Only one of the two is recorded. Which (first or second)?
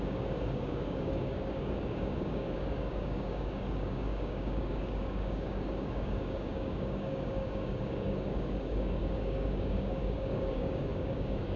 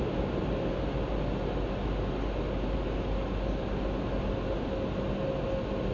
second